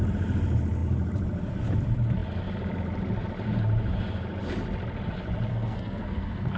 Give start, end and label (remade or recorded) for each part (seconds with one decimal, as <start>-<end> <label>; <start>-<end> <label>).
0.0-5.5 recorded; 5.5-6.6 remade